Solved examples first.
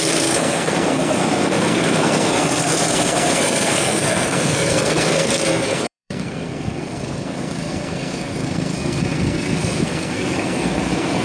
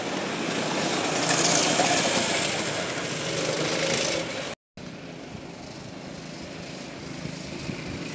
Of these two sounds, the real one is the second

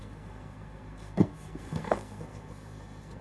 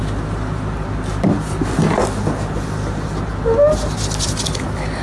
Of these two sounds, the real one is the second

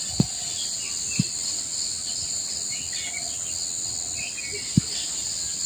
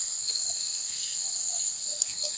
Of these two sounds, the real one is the first